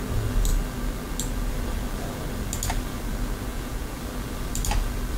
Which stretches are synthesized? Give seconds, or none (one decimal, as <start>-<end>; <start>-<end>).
3.5-4.0